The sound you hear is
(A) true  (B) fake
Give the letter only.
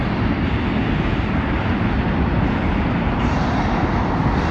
A